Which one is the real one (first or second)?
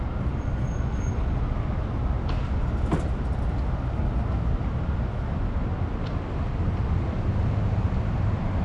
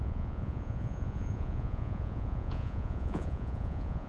first